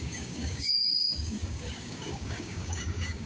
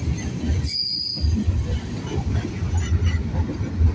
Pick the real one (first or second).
second